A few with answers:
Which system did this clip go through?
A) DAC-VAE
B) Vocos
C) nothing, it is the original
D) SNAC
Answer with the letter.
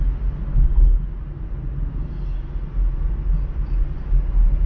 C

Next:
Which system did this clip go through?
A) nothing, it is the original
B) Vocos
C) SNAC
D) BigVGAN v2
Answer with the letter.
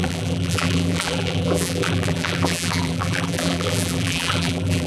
D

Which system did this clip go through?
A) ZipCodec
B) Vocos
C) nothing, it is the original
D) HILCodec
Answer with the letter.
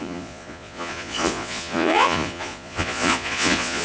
B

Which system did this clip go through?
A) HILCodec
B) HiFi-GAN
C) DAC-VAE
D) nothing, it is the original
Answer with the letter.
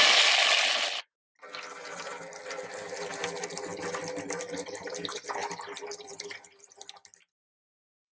D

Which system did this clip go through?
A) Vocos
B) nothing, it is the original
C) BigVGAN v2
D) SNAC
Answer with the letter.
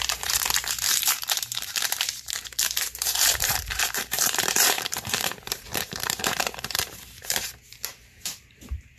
C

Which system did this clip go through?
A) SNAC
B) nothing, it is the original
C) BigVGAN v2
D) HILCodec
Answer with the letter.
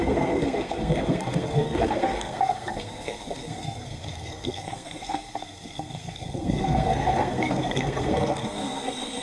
A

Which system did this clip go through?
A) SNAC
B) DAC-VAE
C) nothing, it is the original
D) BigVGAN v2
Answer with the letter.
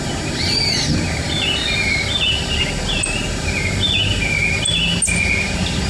C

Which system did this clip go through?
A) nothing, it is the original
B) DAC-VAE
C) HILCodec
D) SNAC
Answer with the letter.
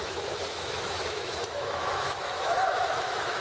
B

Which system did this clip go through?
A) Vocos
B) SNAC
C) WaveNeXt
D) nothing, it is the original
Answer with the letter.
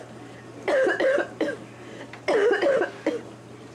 D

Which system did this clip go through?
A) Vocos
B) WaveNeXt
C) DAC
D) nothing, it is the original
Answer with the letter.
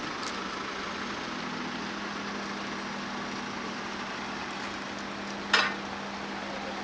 D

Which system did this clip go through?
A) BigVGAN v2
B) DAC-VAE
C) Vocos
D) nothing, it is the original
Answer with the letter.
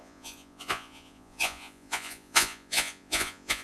C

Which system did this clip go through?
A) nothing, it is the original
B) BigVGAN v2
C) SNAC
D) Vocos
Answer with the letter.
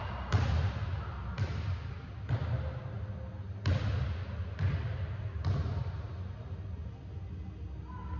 A